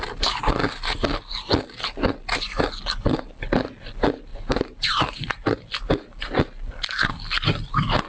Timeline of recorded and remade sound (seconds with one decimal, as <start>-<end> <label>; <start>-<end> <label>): 0.0-4.3 recorded; 4.3-5.6 remade; 5.6-8.1 recorded